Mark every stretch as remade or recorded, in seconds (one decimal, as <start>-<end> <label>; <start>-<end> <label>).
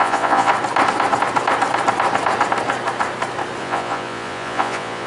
0.0-0.5 remade; 0.5-3.6 recorded; 3.6-5.1 remade